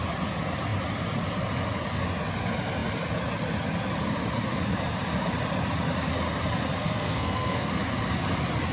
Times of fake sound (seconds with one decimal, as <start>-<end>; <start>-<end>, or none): 6.8-7.7